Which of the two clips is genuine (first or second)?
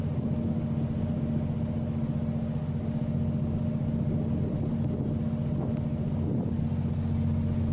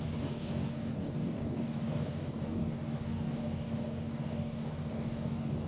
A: first